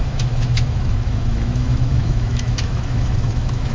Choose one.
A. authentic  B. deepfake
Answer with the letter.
B